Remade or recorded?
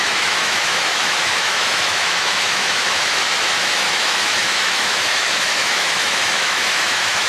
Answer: remade